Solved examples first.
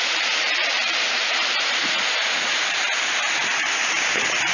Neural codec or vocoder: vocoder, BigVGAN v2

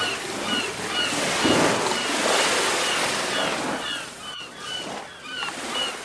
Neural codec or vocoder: none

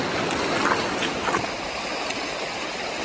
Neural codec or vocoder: none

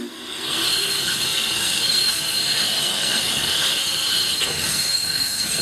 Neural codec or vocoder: codec, SNAC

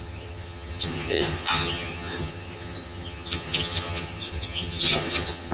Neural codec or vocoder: vocoder, HiFi-GAN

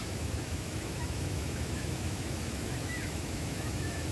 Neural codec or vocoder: autoencoder, DAC-VAE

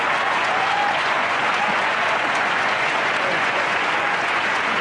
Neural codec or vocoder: vocoder, Vocos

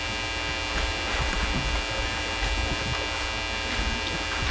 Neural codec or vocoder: none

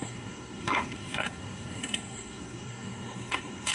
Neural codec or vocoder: codec, SNAC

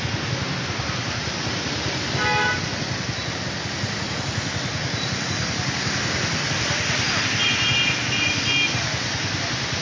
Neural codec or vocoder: none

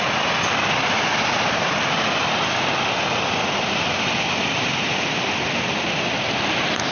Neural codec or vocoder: none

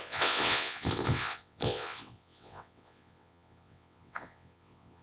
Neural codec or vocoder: vocoder, WaveNeXt